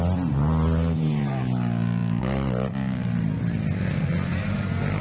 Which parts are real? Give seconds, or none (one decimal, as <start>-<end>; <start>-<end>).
0.0-5.0